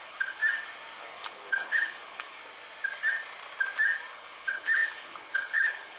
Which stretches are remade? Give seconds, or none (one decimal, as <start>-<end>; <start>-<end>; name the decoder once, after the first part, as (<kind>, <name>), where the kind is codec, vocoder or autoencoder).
0.0-0.4 (codec, HILCodec); 1.0-2.4; 4.1-6.0